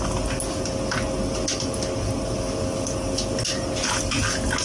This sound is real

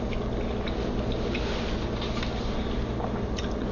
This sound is real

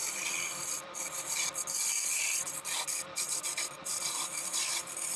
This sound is fake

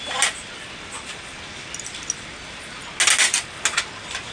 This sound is real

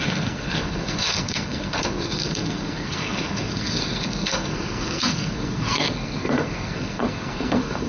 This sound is fake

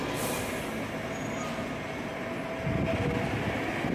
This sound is real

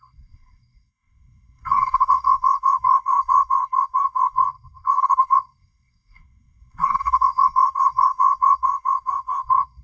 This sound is fake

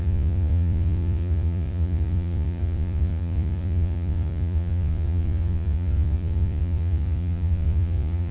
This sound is fake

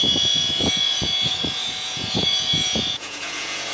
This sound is fake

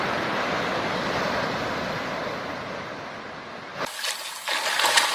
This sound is real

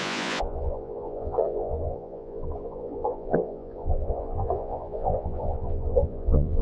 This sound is fake